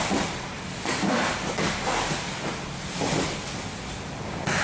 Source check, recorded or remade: recorded